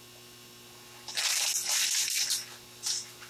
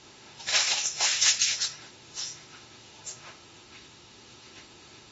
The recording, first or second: first